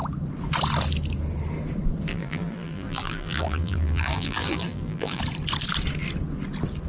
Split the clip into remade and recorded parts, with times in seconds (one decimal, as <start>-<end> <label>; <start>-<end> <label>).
0.0-2.1 recorded; 2.1-5.2 remade; 5.2-6.9 recorded